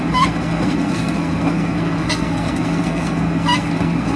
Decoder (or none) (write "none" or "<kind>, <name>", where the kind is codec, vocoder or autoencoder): codec, SNAC